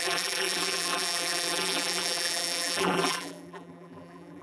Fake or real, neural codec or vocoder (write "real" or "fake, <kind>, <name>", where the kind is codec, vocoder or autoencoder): fake, vocoder, BigVGAN v2